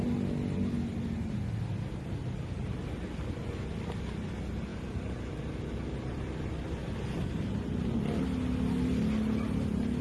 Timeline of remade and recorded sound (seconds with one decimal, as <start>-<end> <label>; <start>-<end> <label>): 0.0-10.0 recorded